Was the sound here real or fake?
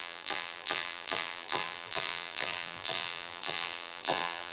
fake